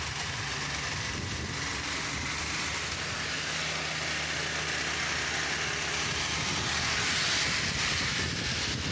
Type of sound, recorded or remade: recorded